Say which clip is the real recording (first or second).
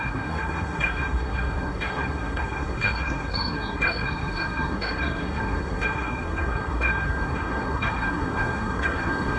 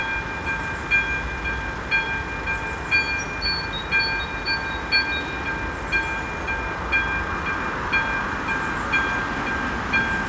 second